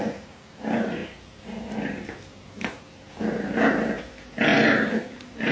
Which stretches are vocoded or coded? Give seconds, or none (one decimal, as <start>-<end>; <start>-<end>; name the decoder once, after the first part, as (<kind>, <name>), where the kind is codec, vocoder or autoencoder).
none